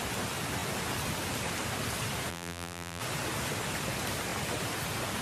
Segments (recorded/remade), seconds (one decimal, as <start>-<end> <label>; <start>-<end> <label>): 0.0-2.3 recorded; 2.3-3.0 remade; 3.0-5.2 recorded